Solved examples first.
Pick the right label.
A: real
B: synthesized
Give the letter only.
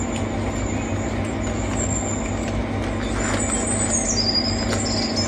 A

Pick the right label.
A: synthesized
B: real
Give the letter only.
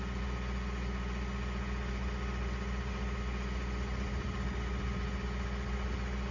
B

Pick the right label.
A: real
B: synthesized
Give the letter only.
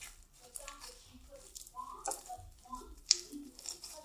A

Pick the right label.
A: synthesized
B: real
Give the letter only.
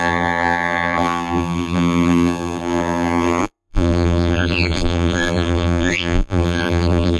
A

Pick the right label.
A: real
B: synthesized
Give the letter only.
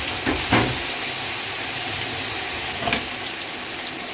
A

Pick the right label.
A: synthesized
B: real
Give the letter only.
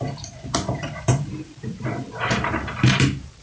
A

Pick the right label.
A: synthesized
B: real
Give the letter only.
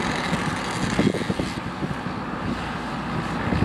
B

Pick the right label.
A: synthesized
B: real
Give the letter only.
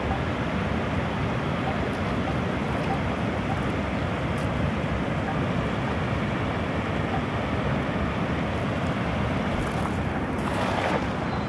B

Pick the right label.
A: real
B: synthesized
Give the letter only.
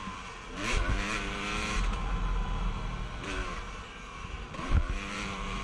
B